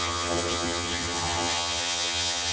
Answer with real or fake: fake